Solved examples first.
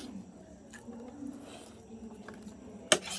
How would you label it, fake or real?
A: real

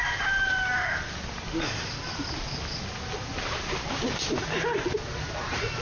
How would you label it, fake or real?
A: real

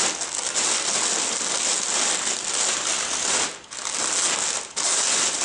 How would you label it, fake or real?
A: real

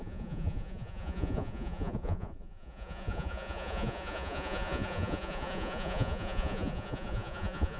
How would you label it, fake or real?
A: fake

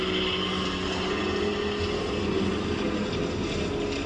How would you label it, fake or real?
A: real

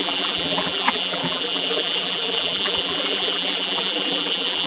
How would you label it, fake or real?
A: fake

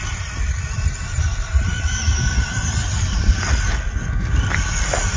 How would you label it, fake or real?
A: real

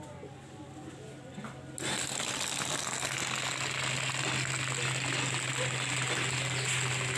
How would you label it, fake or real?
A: real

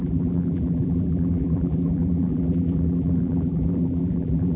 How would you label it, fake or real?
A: fake